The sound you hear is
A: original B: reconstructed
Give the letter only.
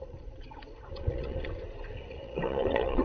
B